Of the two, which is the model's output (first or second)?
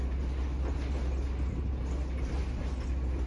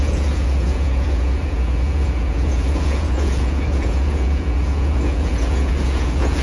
second